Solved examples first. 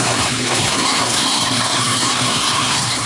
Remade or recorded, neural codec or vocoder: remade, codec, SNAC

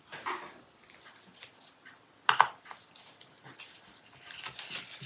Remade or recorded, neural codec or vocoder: recorded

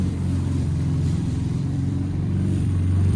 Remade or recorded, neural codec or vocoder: remade, vocoder, BigVGAN v2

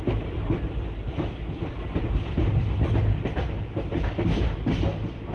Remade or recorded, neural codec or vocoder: recorded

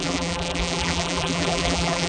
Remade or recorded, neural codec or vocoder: remade, vocoder, BigVGAN v2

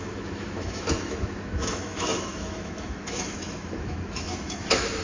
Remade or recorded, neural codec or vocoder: remade, autoencoder, DAC-VAE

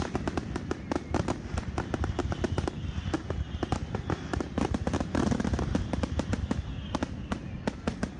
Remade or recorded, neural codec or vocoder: recorded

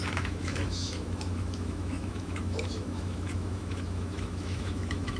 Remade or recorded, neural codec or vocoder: remade, autoencoder, DAC-VAE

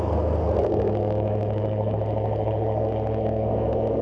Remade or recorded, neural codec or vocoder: remade, codec, SNAC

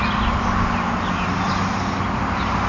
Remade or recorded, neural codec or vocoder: recorded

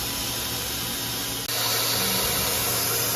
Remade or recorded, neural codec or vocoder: recorded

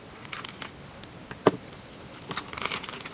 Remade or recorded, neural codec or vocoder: recorded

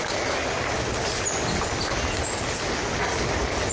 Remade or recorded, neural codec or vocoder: recorded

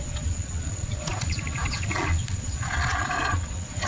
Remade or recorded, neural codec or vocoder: remade, vocoder, Vocos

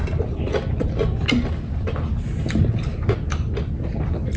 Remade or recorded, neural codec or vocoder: recorded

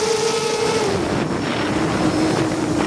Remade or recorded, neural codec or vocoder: remade, vocoder, BigVGAN v2